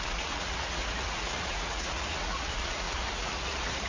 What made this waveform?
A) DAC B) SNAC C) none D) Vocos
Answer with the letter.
D